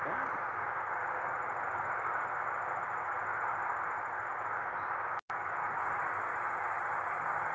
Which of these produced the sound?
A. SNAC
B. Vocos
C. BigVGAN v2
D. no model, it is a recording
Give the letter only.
D